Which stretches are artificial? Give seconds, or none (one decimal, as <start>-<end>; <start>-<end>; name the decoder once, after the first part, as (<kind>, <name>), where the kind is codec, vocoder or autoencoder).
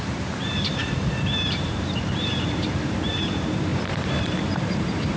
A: 0.0-5.2 (vocoder, BigVGAN v2)